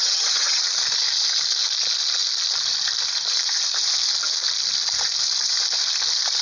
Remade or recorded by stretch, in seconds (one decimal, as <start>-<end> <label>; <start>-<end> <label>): 0.0-0.6 remade; 0.6-6.4 recorded